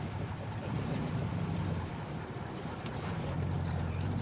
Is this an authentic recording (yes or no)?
no